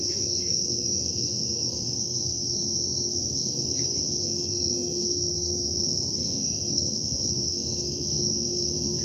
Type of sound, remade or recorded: remade